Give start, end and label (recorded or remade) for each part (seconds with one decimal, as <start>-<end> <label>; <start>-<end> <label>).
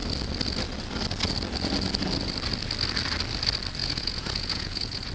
0.0-3.8 recorded; 3.8-5.1 remade